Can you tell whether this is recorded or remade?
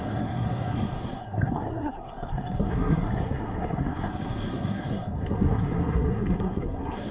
remade